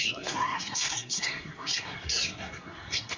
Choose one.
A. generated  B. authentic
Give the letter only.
A